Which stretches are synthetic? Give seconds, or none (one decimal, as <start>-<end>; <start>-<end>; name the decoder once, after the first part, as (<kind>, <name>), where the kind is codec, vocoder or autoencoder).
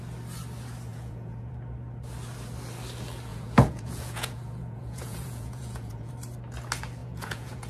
0.9-1.5 (vocoder, Vocos); 3.3-6.1; 7.0-7.7